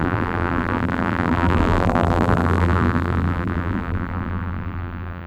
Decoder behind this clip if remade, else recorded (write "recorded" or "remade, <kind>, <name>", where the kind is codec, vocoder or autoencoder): remade, vocoder, BigVGAN v2